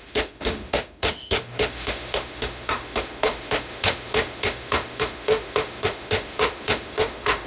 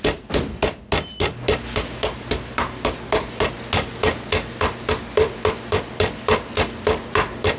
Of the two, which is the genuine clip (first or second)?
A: second